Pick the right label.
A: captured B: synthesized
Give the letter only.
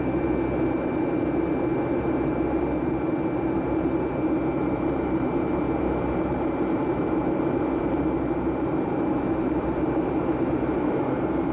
B